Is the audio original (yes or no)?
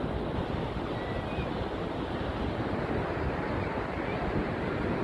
yes